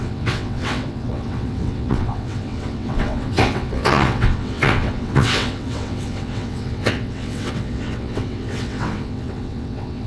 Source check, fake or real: fake